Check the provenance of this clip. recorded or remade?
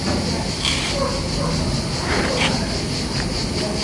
recorded